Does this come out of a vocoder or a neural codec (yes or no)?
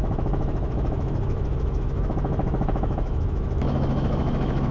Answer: yes